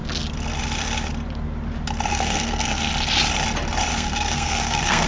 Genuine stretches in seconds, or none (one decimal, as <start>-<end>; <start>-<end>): 0.0-2.1; 2.9-3.9

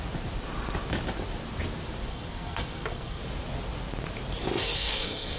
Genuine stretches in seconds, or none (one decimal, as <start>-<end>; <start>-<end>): 0.0-2.1; 3.2-4.6

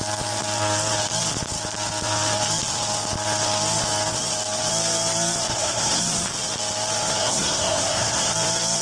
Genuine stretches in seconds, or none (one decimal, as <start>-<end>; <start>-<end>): 0.0-5.5; 6.0-7.2; 8.3-8.8

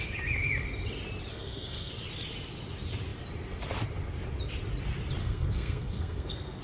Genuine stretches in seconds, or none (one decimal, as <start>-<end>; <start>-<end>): 0.0-1.3; 1.9-5.2

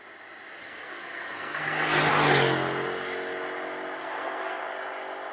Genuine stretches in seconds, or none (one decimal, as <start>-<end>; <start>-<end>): 0.0-0.6; 2.0-4.0; 4.6-5.3

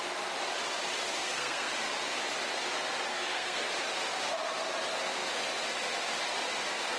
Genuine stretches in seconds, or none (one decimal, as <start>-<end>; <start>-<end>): 0.0-1.2; 1.7-3.1; 3.7-7.0

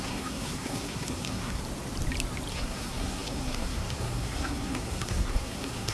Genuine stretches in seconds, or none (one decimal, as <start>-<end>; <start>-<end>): 1.6-2.5